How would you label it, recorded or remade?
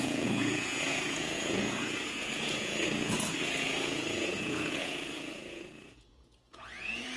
remade